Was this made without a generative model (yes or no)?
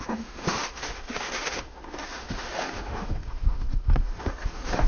no